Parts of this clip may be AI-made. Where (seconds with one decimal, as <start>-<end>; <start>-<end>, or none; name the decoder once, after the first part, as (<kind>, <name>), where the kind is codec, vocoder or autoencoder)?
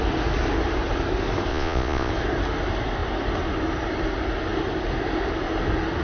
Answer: 1.5-2.1 (vocoder, Vocos)